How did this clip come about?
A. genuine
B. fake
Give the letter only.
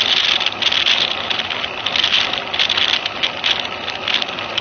A